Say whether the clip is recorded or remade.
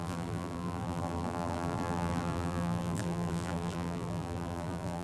remade